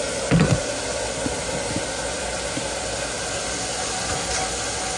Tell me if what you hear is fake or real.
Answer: real